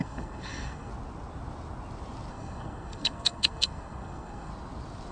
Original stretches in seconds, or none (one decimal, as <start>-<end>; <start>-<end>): 0.9-2.3; 4.5-5.1